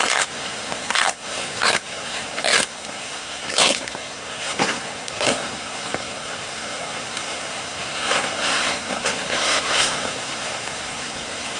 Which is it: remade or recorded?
remade